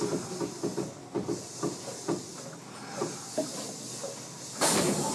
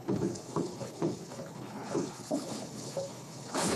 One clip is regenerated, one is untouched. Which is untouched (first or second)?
first